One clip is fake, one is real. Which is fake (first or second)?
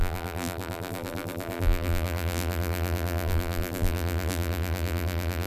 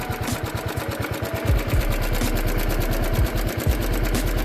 first